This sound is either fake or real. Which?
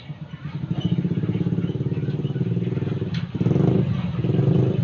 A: real